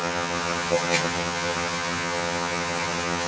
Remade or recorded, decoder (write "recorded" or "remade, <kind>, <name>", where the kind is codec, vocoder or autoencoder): remade, vocoder, HiFi-GAN